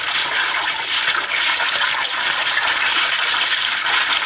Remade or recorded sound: recorded